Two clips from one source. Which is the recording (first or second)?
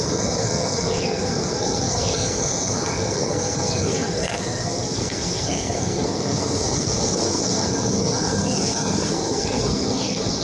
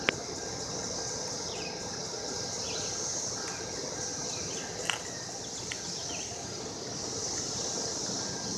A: second